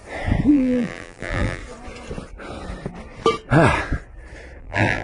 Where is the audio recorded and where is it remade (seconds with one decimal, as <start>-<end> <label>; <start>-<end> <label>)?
0.0-0.5 recorded; 0.5-1.6 remade; 1.6-4.6 recorded; 4.6-5.0 remade